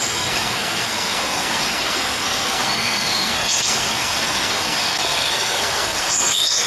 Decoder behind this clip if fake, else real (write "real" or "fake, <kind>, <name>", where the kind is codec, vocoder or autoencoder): fake, codec, SNAC